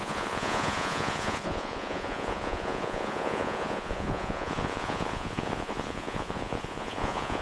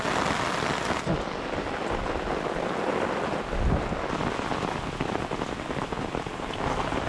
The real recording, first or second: second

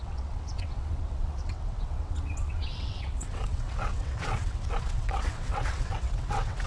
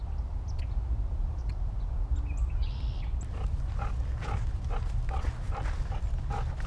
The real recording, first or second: second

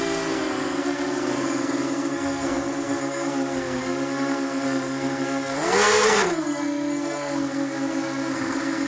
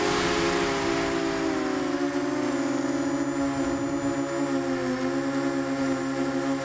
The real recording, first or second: second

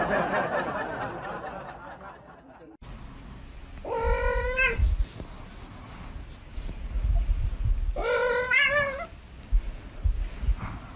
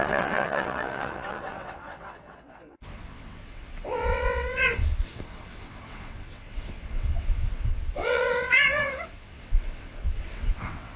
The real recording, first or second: first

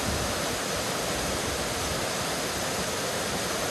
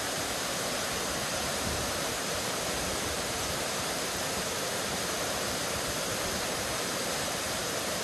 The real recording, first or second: first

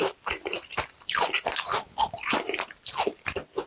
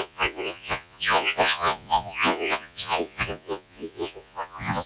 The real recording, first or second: first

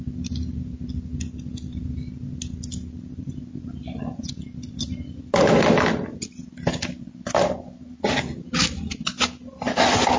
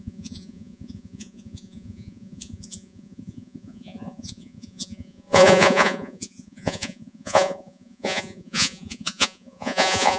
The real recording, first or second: first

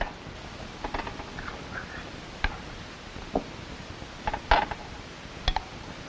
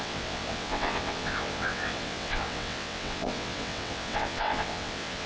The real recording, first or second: first